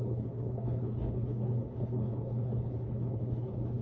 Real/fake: fake